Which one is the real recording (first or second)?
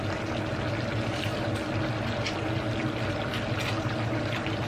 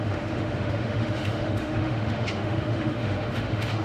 first